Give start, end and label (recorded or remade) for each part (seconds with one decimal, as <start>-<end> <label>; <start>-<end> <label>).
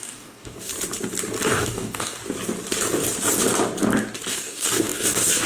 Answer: 0.0-0.7 remade; 0.7-1.5 recorded; 1.5-2.2 remade; 2.2-4.3 recorded; 4.3-5.5 remade